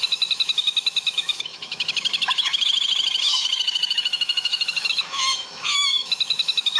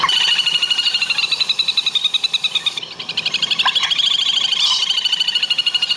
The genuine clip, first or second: second